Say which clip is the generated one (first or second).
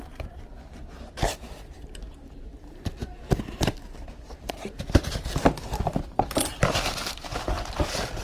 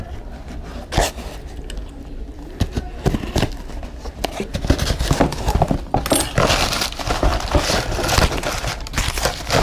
first